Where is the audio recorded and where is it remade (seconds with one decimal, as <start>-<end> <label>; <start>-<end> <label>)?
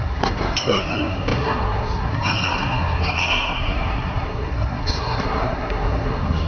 0.0-6.5 remade